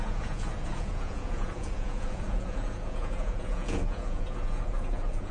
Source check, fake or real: fake